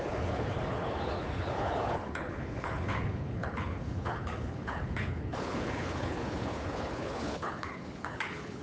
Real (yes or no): no